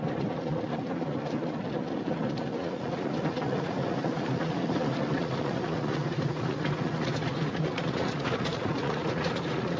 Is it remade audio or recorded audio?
remade